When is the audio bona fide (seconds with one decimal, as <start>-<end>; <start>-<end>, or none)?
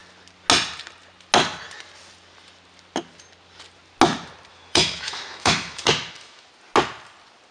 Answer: 0.0-4.5; 6.5-7.5